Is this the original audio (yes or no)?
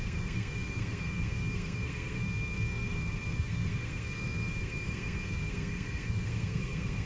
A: no